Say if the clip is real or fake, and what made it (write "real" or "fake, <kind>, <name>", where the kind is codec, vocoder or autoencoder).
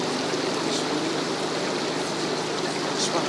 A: real